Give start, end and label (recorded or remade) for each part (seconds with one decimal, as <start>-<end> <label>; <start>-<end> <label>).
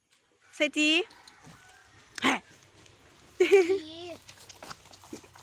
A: 0.0-3.8 recorded; 3.8-4.4 remade; 4.4-5.4 recorded